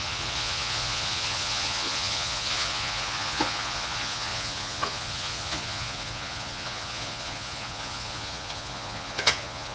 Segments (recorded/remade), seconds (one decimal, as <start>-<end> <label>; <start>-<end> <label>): 0.0-9.7 remade